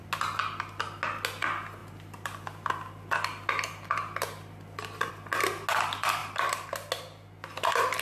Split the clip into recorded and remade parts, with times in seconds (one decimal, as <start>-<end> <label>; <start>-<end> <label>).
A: 0.0-8.0 recorded